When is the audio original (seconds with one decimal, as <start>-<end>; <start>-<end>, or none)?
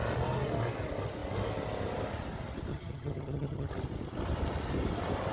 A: 0.0-2.7; 3.7-5.3